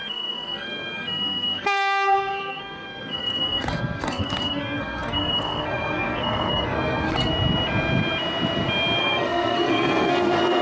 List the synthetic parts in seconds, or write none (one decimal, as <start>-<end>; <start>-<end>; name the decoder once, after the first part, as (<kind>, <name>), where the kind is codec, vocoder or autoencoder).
0.0-7.3 (codec, SNAC); 9.0-10.6